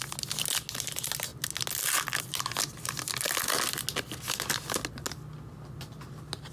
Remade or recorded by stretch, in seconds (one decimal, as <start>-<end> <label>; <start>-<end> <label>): 0.0-6.5 recorded